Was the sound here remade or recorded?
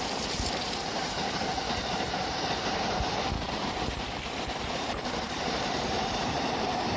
remade